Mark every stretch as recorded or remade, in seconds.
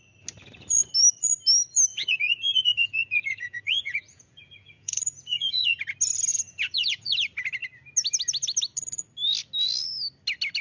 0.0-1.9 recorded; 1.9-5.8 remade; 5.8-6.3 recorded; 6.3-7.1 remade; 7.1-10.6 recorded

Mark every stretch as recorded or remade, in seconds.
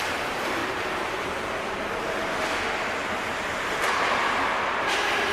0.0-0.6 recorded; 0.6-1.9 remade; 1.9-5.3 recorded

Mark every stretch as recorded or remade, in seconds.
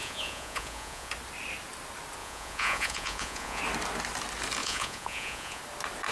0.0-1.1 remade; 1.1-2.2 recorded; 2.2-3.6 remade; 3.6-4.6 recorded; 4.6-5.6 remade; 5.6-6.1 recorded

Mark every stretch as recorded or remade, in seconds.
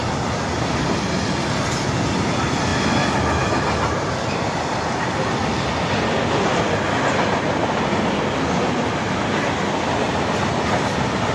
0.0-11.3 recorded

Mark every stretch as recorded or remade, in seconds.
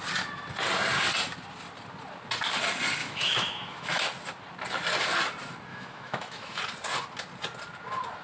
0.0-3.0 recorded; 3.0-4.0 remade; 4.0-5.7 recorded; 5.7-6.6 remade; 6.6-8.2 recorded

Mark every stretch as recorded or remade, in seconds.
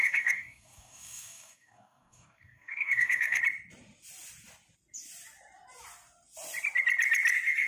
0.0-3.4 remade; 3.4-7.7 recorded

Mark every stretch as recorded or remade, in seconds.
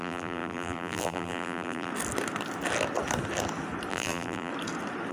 0.0-1.9 remade; 1.9-3.9 recorded; 3.9-4.5 remade; 4.5-5.1 recorded